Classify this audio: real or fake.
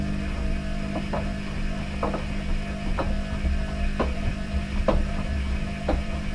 fake